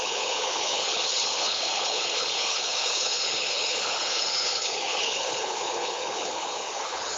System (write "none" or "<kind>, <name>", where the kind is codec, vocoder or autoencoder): codec, HILCodec